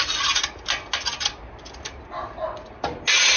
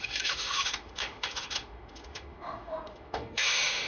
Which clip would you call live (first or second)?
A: first